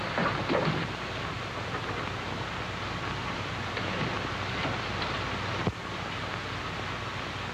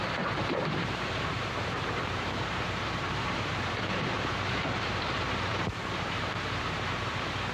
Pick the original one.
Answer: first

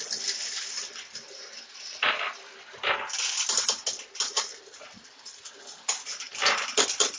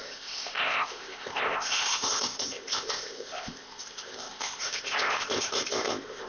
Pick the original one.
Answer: first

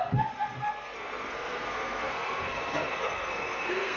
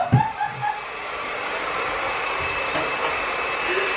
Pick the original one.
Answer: second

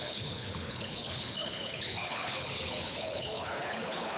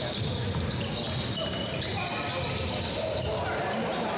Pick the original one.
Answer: second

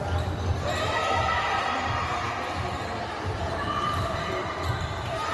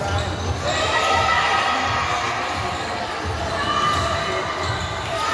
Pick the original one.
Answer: second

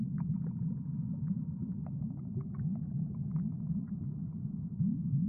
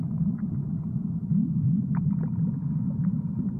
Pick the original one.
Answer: first